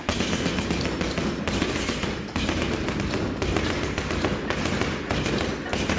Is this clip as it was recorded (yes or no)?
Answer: yes